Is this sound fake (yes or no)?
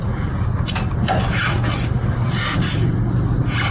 yes